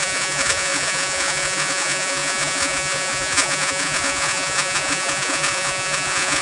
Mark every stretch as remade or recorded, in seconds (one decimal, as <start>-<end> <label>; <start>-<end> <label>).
0.0-6.4 remade